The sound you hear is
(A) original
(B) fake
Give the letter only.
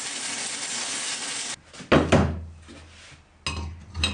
A